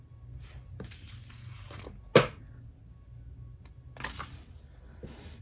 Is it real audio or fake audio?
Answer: real